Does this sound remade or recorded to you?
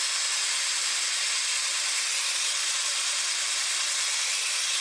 recorded